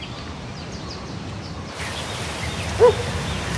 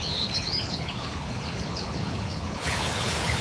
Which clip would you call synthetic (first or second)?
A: second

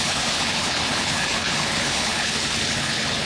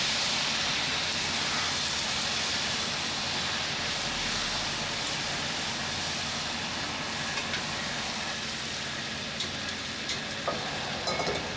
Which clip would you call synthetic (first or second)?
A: first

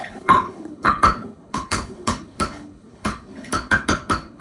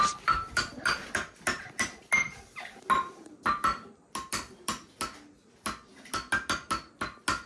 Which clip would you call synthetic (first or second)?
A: first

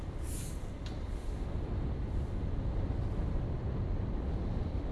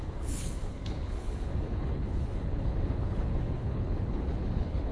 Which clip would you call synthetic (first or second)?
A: second